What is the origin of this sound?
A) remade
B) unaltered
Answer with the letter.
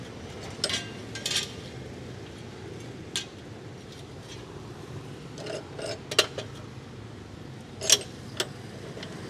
B